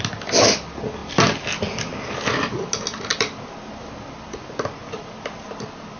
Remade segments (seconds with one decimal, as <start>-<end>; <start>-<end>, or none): 1.0-2.7